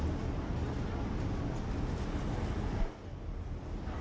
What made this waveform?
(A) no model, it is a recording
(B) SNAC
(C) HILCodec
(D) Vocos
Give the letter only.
A